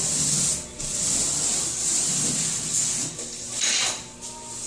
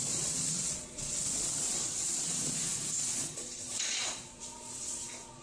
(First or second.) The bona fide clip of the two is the first